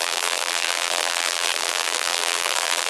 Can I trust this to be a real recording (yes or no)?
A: no